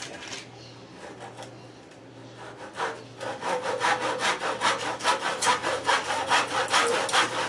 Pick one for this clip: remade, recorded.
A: recorded